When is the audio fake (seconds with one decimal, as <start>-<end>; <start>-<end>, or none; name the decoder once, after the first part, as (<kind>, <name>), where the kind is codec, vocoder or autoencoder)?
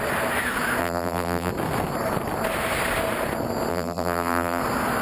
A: 0.8-1.5 (vocoder, BigVGAN v2); 3.7-4.6